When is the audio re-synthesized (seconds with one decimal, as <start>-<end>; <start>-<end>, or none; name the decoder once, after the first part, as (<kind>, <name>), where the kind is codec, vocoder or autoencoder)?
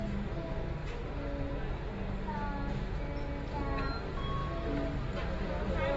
none